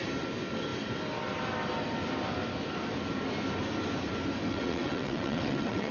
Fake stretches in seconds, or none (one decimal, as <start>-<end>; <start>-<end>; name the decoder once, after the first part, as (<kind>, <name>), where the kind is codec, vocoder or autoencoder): 4.5-5.9 (vocoder, WaveNeXt)

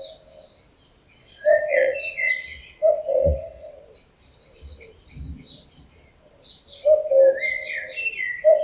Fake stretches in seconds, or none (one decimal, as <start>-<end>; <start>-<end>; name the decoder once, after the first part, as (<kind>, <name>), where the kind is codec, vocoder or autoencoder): 1.2-2.3 (vocoder, WaveNeXt); 3.1-3.7

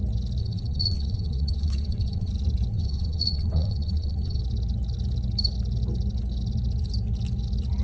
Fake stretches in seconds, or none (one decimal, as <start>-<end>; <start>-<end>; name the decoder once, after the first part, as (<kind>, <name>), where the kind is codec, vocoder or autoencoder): 0.4-2.3 (vocoder, WaveNeXt); 2.7-4.4

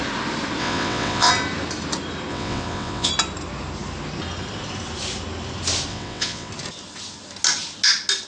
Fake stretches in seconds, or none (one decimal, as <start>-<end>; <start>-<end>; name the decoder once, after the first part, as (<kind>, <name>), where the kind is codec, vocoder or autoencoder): 0.6-1.3 (vocoder, WaveNeXt); 2.3-3.1; 5.9-6.5

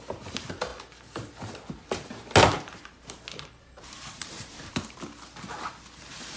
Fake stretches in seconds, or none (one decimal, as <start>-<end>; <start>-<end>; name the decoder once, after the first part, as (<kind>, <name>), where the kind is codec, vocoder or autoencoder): none

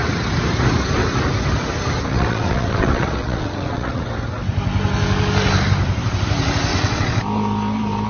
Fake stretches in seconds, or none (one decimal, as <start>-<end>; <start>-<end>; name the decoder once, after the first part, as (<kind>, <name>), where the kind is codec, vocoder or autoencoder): 2.1-4.0 (vocoder, WaveNeXt); 6.7-7.2

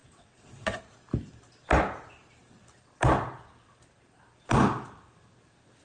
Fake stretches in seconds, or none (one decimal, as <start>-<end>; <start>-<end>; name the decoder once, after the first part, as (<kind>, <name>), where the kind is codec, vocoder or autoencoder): 0.0-0.8 (vocoder, WaveNeXt)